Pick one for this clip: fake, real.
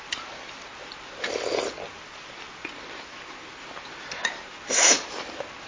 real